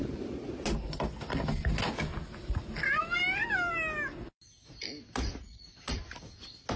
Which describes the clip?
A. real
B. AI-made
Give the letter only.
A